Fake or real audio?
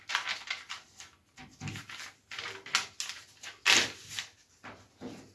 real